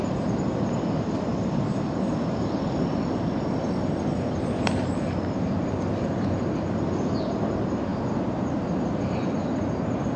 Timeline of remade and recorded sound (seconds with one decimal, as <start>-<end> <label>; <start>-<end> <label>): 0.0-10.2 recorded